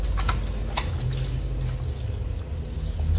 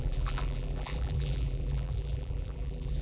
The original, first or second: first